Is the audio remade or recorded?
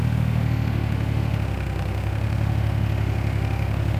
remade